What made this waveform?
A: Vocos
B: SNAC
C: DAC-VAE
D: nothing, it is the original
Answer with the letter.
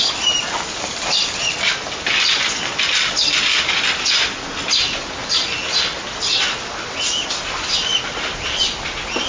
D